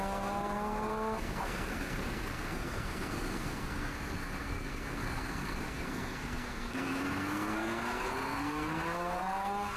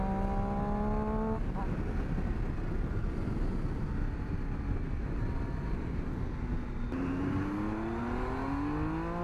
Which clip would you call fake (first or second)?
first